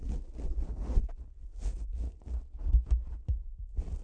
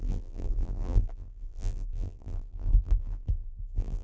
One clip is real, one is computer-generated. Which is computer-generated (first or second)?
second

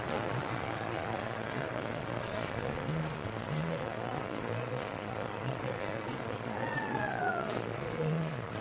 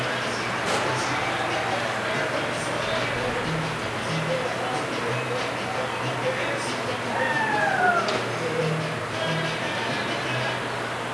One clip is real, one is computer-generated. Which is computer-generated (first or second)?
first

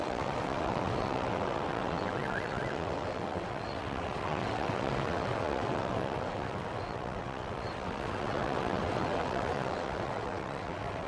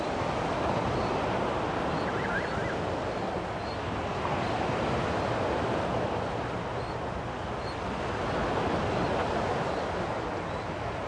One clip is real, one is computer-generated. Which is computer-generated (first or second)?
first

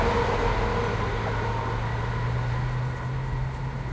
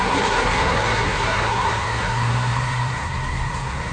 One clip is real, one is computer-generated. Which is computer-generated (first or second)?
second